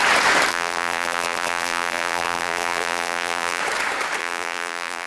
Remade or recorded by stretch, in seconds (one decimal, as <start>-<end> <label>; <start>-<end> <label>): 0.0-0.5 recorded; 0.5-3.6 remade; 3.6-4.2 recorded; 4.2-5.1 remade